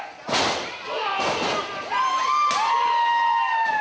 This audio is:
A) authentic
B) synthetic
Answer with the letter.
A